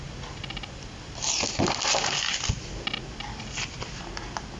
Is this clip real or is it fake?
real